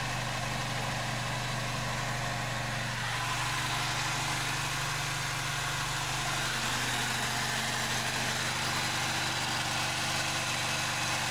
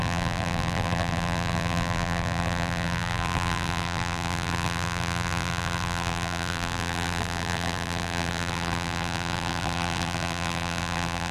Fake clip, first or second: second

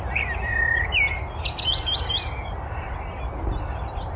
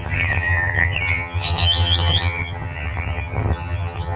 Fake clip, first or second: second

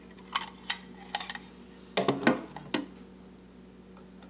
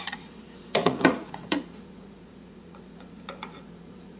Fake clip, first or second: second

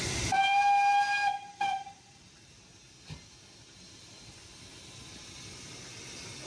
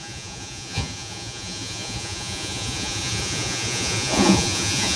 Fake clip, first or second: second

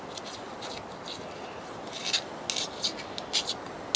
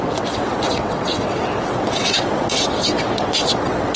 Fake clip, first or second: second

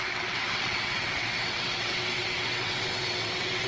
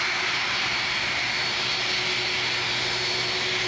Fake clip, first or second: first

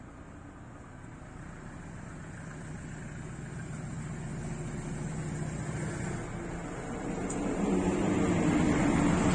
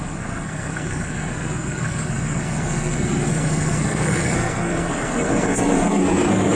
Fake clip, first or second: second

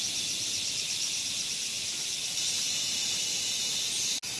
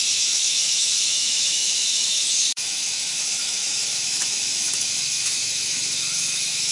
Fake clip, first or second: second